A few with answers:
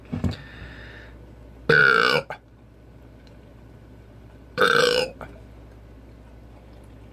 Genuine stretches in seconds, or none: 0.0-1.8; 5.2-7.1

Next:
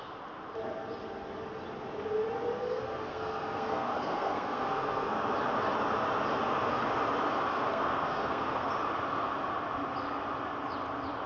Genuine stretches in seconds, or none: 0.0-2.6; 5.1-7.5; 8.7-11.3

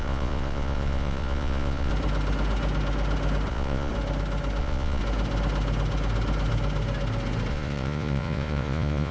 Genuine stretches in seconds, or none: 1.9-3.5; 3.9-4.6; 5.0-7.5

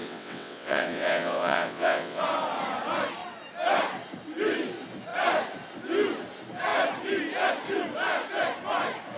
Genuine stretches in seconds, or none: 2.2-9.2

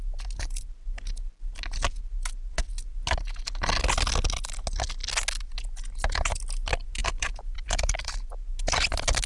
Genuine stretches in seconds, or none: 0.0-7.0; 8.3-9.3

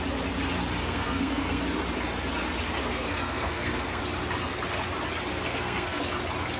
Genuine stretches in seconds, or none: 0.0-0.8; 1.6-2.8; 4.0-5.3; 6.0-6.6